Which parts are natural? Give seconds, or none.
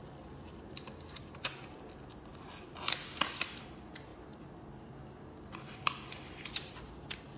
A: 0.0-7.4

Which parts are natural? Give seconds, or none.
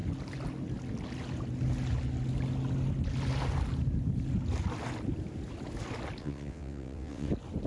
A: 0.0-6.2; 7.3-7.7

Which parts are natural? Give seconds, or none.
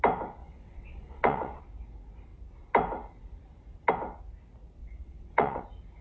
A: 0.0-0.4; 1.6-4.8; 5.6-6.0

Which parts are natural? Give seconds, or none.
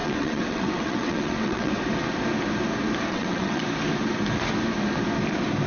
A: 1.7-3.1; 3.6-5.7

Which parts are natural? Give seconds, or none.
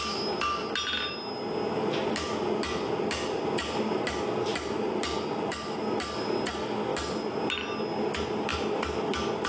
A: 0.0-9.5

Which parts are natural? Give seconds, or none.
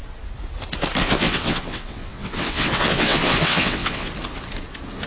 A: 0.0-1.0; 4.1-5.1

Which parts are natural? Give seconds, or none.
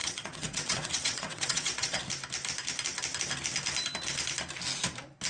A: 2.0-5.3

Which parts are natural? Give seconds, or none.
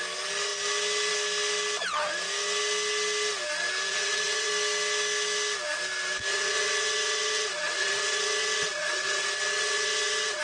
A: 0.0-3.9; 4.5-6.3